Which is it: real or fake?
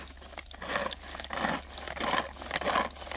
real